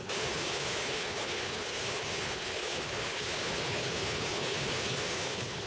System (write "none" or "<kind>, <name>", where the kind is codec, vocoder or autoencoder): codec, HILCodec